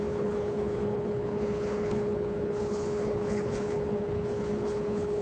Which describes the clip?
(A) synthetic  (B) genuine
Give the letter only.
A